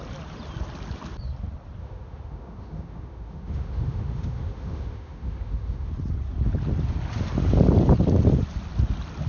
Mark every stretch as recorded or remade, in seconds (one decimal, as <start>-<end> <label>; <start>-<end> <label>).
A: 0.0-1.8 recorded; 1.8-5.9 remade; 5.9-9.3 recorded